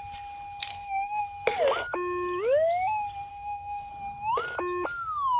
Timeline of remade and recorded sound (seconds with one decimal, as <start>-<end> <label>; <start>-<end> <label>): 0.0-0.7 recorded; 0.7-1.2 remade; 1.2-3.3 recorded; 3.3-3.9 remade; 3.9-5.4 recorded

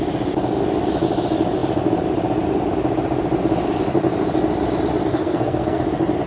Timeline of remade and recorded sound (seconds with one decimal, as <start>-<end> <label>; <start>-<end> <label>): 0.0-5.1 recorded; 5.1-5.8 remade; 5.8-6.3 recorded